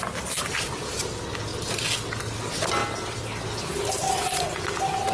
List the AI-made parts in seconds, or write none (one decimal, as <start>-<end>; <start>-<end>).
none